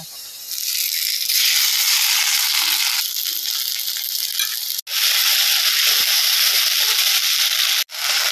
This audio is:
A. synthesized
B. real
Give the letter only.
B